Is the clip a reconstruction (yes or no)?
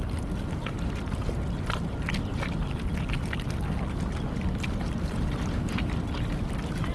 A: no